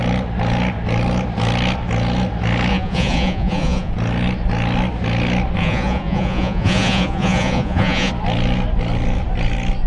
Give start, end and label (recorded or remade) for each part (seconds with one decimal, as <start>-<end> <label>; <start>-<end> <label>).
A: 0.0-2.7 recorded; 2.7-3.9 remade; 3.9-5.6 recorded; 5.6-8.1 remade; 8.1-9.9 recorded